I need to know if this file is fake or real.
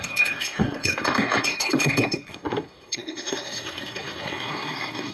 fake